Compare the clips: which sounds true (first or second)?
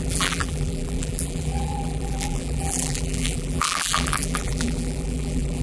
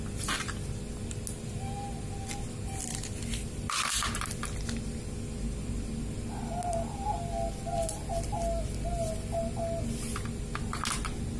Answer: second